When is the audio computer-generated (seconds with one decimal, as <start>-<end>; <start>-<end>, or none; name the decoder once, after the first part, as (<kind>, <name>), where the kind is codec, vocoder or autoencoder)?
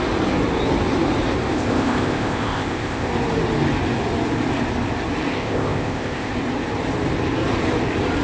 1.5-3.1 (codec, ZipCodec); 5.3-6.3